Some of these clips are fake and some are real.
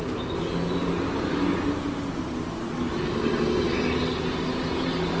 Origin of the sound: real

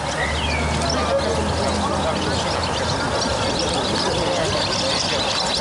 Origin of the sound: real